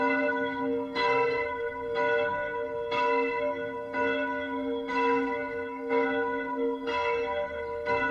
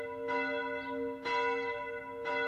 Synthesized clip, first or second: first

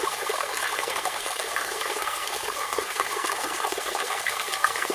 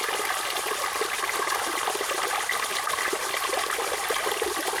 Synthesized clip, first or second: first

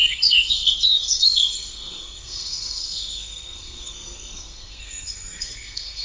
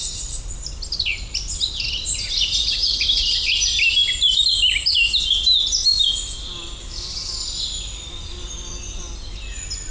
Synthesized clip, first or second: first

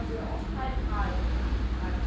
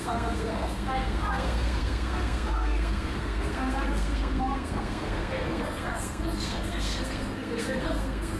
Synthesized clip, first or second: second